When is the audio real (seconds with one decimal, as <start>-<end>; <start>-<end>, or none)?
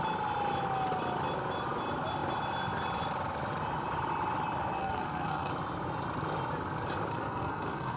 0.0-4.8; 5.5-7.1